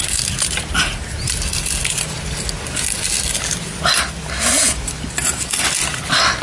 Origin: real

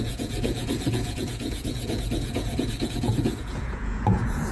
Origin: fake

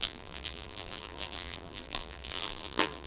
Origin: fake